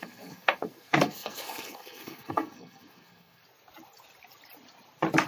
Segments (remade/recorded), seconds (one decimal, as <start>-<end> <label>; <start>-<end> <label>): 0.0-3.4 remade; 3.4-5.3 recorded